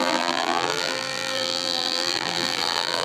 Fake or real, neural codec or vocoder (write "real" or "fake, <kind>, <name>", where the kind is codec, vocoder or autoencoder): fake, vocoder, BigVGAN v2